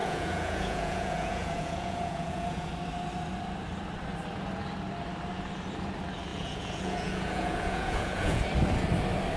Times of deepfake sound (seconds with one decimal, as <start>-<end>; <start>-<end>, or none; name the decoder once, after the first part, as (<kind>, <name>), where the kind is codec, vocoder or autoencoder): 0.0-2.7 (vocoder, Vocos); 6.3-8.4